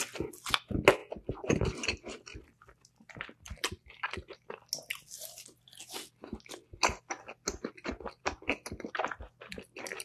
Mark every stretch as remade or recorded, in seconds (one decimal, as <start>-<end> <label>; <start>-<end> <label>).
0.0-10.0 recorded